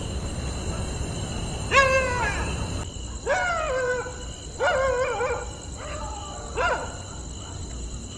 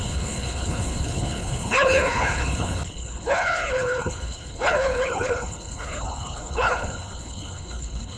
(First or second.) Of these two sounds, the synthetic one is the second